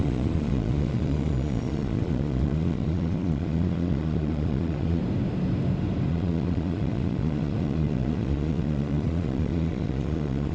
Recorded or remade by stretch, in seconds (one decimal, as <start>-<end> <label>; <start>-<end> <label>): 0.0-5.0 remade; 5.0-6.1 recorded; 6.1-10.5 remade

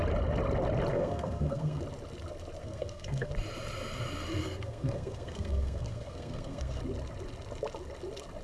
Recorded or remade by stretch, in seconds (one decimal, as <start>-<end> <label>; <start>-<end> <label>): 0.0-0.9 recorded; 0.9-1.8 remade; 1.8-2.6 recorded; 2.6-3.3 remade; 3.3-4.4 recorded; 4.4-6.8 remade; 6.8-8.4 recorded

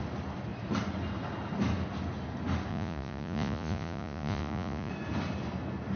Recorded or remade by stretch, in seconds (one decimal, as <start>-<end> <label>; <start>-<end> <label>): 0.0-2.7 recorded; 2.7-4.9 remade; 4.9-6.0 recorded

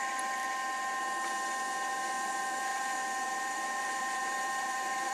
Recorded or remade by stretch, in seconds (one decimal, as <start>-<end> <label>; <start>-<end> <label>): 0.0-0.4 remade; 0.4-1.9 recorded; 1.9-5.1 remade

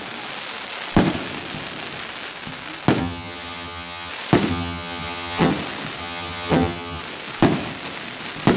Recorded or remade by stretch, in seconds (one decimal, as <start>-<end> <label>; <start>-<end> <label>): 0.0-3.0 recorded; 3.0-4.1 remade; 4.1-4.5 recorded; 4.5-5.5 remade; 5.5-6.0 recorded; 6.0-7.0 remade; 7.0-8.6 recorded

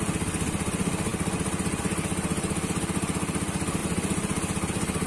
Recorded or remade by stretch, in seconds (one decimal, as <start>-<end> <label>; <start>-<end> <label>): 0.0-5.1 recorded

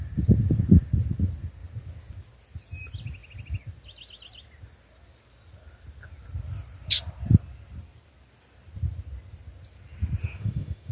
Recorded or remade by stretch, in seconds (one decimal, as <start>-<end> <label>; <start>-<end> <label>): 0.0-10.2 recorded; 10.2-10.9 remade

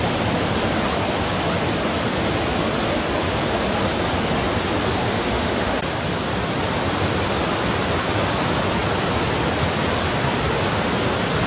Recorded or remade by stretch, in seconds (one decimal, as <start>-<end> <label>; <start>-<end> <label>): 0.0-5.0 recorded; 5.0-5.8 remade; 5.8-11.5 recorded